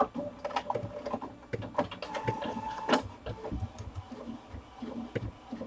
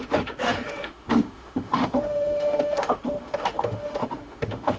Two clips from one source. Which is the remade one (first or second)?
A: second